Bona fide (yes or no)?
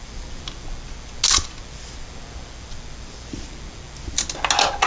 yes